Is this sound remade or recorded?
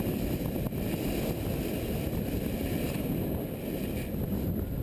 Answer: recorded